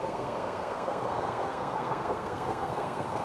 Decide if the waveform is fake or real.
fake